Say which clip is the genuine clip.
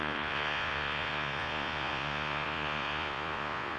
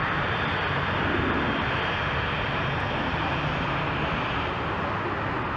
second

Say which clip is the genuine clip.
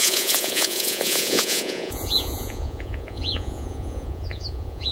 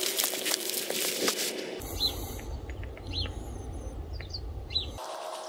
second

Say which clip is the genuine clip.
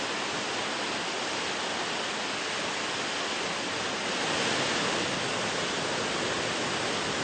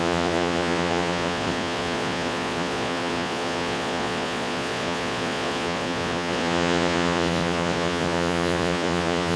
first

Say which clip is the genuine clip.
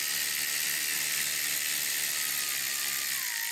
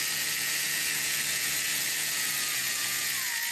first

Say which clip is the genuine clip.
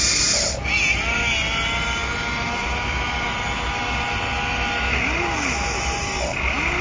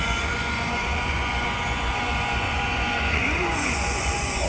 first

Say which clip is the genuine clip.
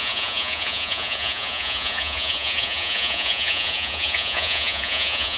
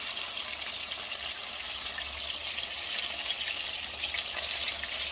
second